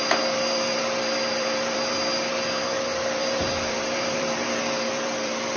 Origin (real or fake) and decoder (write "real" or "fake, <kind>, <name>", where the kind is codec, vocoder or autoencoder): fake, vocoder, BigVGAN v2